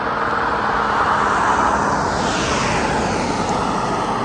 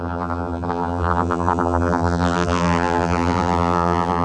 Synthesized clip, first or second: second